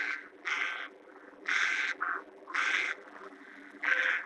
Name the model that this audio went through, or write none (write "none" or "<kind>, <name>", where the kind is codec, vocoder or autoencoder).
vocoder, BigVGAN v2